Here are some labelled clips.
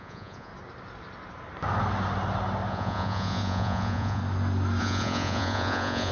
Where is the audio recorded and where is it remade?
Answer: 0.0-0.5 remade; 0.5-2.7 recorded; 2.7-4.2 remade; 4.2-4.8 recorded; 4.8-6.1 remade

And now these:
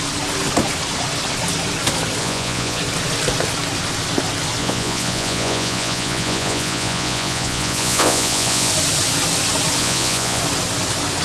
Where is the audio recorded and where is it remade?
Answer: 0.0-2.2 recorded; 2.2-2.8 remade; 2.8-4.6 recorded; 4.6-8.7 remade; 8.7-9.8 recorded; 9.8-10.4 remade; 10.4-11.2 recorded

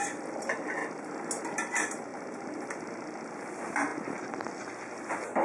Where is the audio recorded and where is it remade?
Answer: 0.0-5.4 recorded

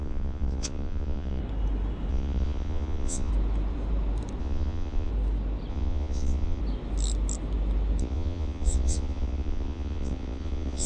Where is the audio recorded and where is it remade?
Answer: 0.0-1.4 remade; 1.4-2.1 recorded; 2.1-3.3 remade; 3.3-4.4 recorded; 4.4-5.1 remade; 5.1-5.7 recorded; 5.7-6.6 remade; 6.6-8.0 recorded; 8.0-10.9 remade